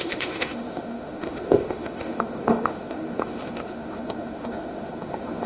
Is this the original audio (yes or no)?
no